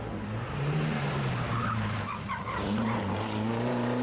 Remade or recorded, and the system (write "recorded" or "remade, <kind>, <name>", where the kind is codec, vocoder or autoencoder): remade, vocoder, BigVGAN v2